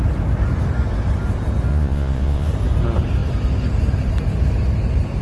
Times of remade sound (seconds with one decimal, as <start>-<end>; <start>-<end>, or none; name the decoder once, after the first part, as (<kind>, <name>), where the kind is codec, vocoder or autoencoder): 1.7-2.5 (vocoder, Vocos)